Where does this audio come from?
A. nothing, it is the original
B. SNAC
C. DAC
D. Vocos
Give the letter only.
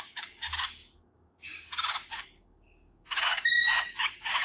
C